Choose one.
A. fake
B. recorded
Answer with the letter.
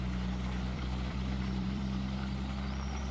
A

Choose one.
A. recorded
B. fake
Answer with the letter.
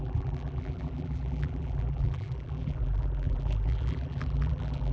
B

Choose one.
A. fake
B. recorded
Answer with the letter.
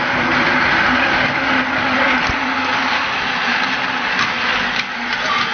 B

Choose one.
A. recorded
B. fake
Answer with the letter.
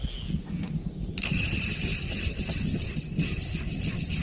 A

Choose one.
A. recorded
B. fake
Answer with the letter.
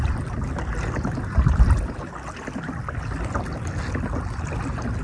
A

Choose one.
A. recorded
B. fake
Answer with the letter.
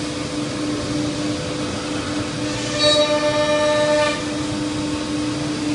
A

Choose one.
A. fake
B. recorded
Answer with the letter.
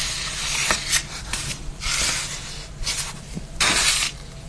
A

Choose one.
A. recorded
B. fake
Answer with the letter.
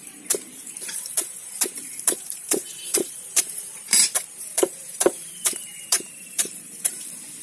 B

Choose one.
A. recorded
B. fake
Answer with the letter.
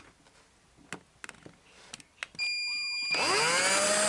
A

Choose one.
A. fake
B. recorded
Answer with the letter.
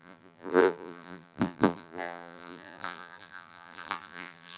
A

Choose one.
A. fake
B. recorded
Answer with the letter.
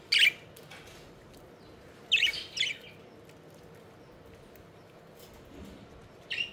B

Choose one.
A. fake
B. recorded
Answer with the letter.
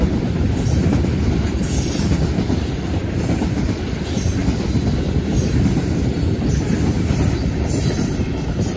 A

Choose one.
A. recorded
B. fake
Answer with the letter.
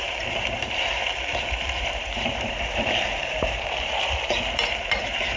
B